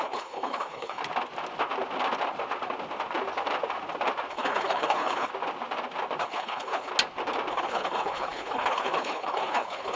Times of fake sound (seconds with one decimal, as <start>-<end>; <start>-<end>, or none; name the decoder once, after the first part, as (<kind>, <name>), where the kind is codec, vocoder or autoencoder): 0.0-1.0 (codec, HILCodec); 4.3-5.3; 6.2-6.9; 7.5-10.0